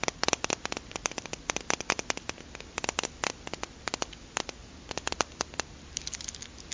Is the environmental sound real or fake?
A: real